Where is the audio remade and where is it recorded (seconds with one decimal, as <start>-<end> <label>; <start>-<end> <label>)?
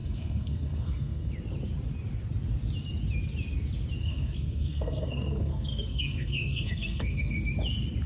0.0-1.3 remade; 1.3-4.0 recorded; 4.0-7.4 remade; 7.4-8.1 recorded